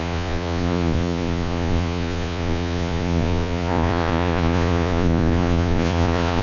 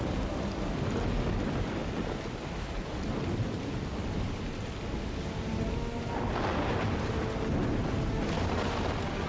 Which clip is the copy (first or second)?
first